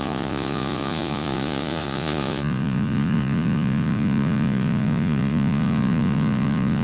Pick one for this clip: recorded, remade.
remade